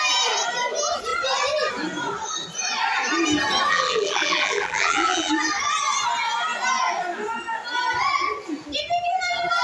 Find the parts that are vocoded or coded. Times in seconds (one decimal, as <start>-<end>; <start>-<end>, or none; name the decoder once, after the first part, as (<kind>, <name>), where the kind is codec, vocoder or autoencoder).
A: 3.7-5.3 (vocoder, BigVGAN v2)